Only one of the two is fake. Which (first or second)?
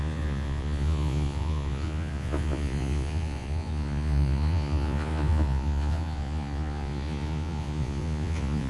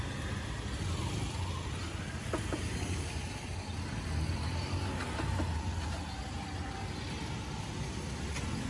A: first